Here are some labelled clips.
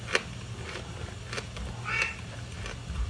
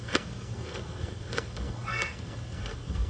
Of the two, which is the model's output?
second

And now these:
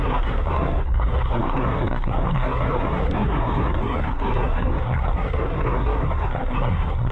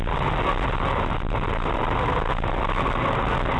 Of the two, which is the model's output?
first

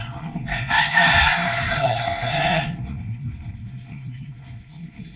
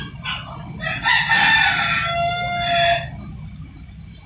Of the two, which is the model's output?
first